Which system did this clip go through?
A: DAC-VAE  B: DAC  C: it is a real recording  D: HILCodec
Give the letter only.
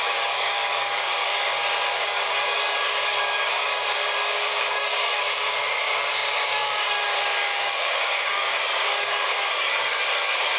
B